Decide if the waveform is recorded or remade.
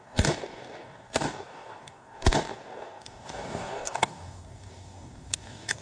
remade